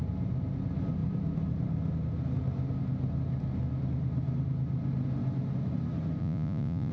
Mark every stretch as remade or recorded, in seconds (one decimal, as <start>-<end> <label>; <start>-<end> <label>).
0.0-6.2 recorded; 6.2-6.9 remade